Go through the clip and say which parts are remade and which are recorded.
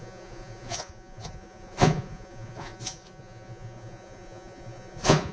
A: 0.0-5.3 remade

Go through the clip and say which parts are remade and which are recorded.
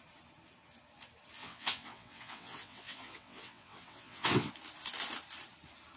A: 0.0-1.4 recorded; 1.4-4.5 remade; 4.5-6.0 recorded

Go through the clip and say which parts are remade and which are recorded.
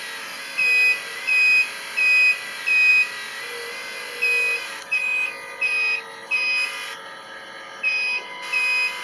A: 0.0-9.0 recorded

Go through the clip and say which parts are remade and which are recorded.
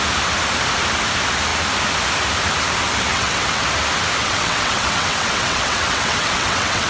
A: 0.0-3.1 recorded; 3.1-3.7 remade; 3.7-4.2 recorded; 4.2-6.9 remade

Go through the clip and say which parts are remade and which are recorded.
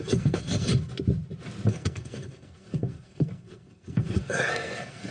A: 0.0-0.7 remade; 0.7-1.7 recorded; 1.7-5.1 remade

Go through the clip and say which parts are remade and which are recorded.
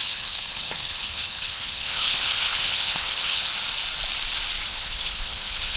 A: 0.0-3.5 remade; 3.5-4.7 recorded; 4.7-5.8 remade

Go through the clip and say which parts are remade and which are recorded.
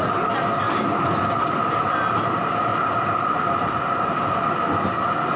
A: 0.0-2.7 recorded; 2.7-3.8 remade; 3.8-5.4 recorded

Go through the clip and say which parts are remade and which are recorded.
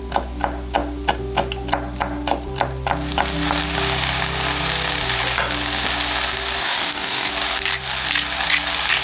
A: 0.0-6.6 recorded; 6.6-7.3 remade; 7.3-9.0 recorded